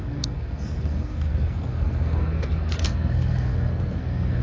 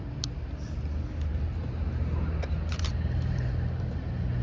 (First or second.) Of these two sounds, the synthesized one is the first